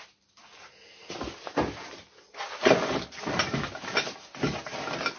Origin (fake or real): real